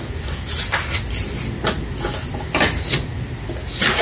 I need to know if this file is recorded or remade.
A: recorded